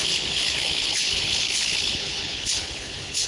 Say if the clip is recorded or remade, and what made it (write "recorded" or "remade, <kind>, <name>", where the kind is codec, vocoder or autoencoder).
remade, codec, HILCodec